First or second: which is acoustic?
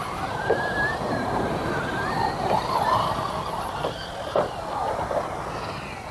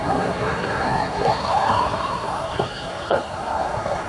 first